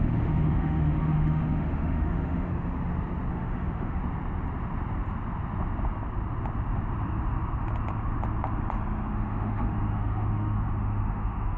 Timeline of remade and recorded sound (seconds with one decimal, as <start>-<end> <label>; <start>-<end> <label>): 0.0-2.5 remade; 2.5-3.3 recorded; 3.3-4.0 remade; 4.0-9.1 recorded; 9.1-11.6 remade